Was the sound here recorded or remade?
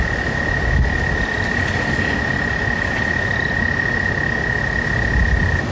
recorded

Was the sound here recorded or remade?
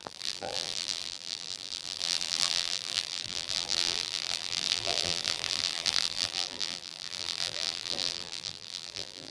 remade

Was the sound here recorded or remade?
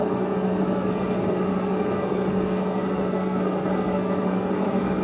remade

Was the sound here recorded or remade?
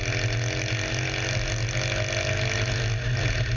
recorded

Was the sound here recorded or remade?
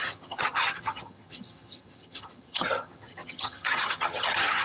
remade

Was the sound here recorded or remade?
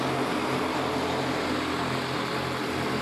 recorded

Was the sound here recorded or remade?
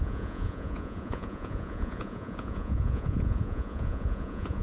remade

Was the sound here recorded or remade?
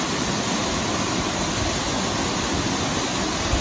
recorded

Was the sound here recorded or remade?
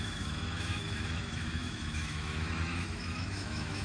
remade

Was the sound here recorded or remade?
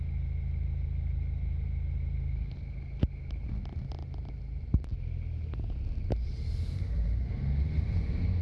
recorded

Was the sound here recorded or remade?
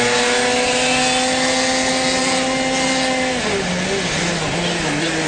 recorded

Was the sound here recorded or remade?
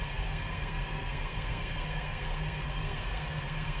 remade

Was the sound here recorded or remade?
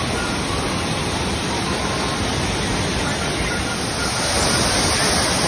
recorded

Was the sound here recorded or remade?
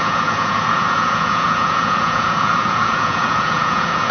remade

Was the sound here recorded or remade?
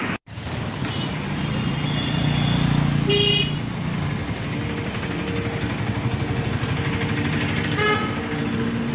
recorded